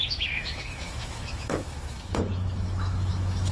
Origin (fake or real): fake